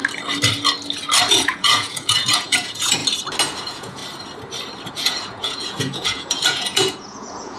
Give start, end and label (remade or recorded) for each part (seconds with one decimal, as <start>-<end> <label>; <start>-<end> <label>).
0.0-1.3 recorded; 1.3-3.0 remade; 3.0-3.6 recorded; 3.6-4.0 remade; 4.0-4.9 recorded; 4.9-7.6 remade